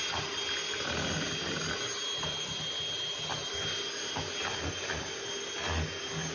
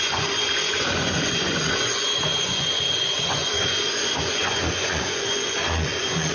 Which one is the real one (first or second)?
first